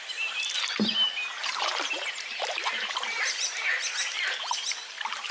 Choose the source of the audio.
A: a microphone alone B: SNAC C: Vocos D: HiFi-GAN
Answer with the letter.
A